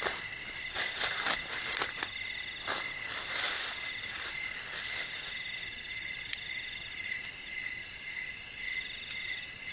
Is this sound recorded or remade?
recorded